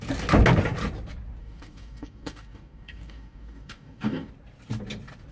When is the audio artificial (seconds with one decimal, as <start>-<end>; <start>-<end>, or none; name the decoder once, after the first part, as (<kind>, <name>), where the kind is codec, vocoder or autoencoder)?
1.4-4.3 (codec, DAC)